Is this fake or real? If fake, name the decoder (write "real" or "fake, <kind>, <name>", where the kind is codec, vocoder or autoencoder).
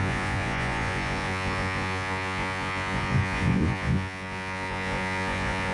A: fake, vocoder, Vocos